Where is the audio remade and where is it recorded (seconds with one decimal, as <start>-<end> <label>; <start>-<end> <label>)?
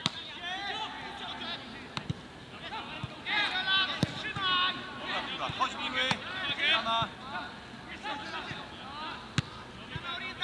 0.0-10.4 recorded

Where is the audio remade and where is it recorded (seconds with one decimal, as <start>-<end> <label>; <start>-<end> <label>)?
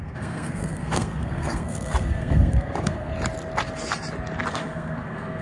0.0-3.1 remade; 3.1-4.5 recorded; 4.5-5.4 remade